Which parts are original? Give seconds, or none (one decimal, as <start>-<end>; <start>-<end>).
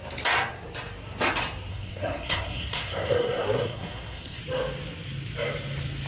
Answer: 0.0-1.7; 4.4-6.1